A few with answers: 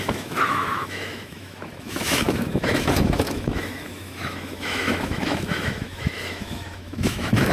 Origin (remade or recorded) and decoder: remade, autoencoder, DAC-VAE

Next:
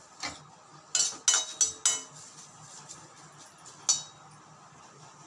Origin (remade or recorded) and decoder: recorded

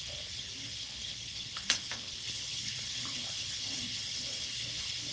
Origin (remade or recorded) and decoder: remade, codec, HILCodec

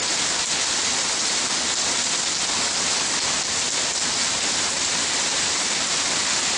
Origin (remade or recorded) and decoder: recorded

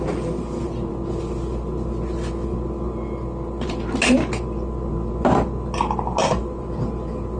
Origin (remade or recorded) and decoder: recorded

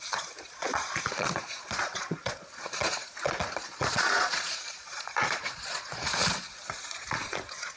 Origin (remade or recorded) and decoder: remade, vocoder, Vocos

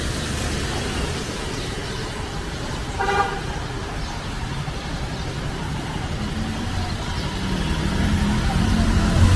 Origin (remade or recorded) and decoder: remade, vocoder, BigVGAN v2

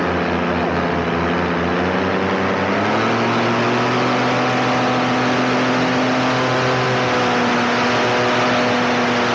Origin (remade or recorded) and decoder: recorded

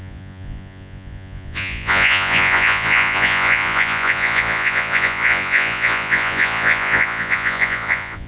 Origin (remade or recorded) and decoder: remade, vocoder, Vocos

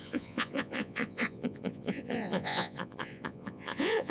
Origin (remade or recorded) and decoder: remade, vocoder, Vocos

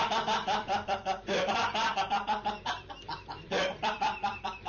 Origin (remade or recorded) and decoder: remade, vocoder, BigVGAN v2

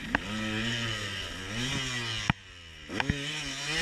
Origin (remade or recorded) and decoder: recorded